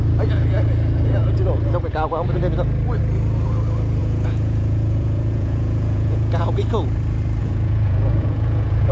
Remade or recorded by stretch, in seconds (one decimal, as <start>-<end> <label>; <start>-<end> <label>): 0.0-4.0 recorded; 4.0-6.6 remade; 6.6-7.4 recorded; 7.4-8.9 remade